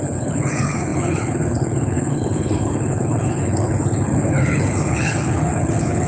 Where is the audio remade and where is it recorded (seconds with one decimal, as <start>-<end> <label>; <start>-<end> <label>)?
0.0-6.1 remade